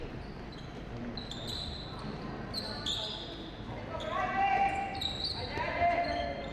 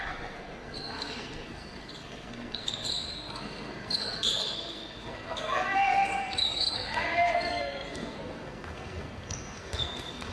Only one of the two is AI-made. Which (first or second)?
second